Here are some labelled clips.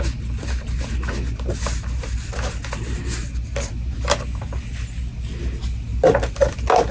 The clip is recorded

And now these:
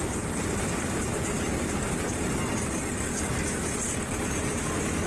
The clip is recorded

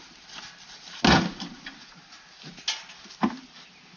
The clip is recorded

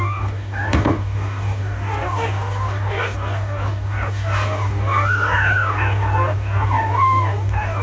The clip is remade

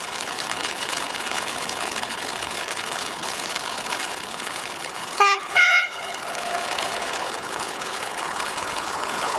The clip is remade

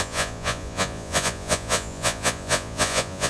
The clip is remade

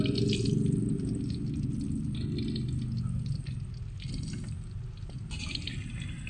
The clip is recorded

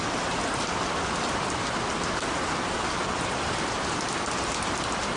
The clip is recorded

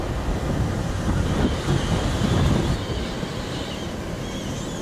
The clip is recorded